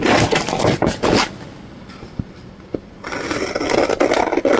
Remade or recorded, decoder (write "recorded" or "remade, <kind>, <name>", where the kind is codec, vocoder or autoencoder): recorded